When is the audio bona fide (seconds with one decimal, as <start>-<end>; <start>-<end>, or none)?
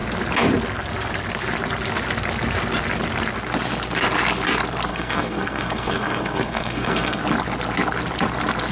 0.0-4.9; 7.2-8.7